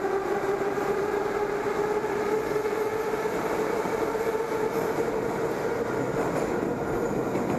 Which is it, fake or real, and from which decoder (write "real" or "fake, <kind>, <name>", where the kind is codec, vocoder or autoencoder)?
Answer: real